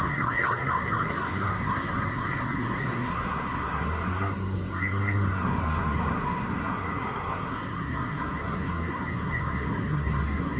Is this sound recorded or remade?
remade